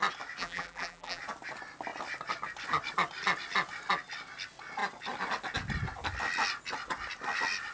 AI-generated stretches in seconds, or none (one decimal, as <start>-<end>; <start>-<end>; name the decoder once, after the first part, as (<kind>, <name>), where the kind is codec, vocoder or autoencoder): 0.4-1.2 (vocoder, BigVGAN v2)